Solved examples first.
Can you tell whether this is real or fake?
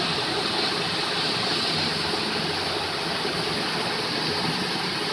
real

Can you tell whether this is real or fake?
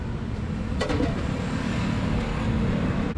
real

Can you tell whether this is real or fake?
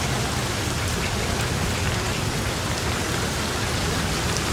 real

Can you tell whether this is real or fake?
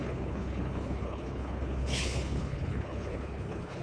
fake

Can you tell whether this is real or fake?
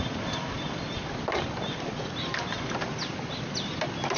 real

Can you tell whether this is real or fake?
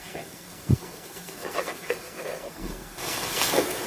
fake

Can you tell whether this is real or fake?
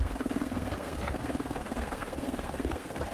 fake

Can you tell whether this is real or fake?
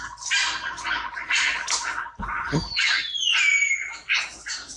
real